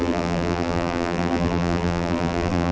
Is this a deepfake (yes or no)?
yes